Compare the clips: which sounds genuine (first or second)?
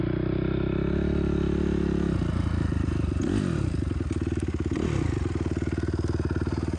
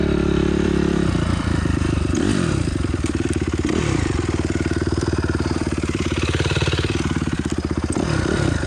first